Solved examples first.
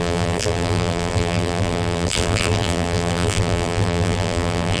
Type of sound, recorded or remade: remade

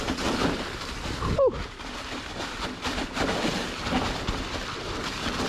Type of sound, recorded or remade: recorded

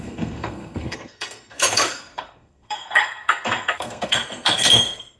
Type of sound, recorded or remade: remade